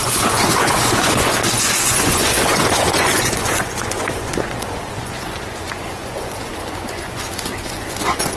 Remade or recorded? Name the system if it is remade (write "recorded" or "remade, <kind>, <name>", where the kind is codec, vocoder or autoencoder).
remade, vocoder, Vocos